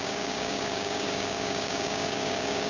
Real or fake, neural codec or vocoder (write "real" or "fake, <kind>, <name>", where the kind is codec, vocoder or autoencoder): fake, codec, DAC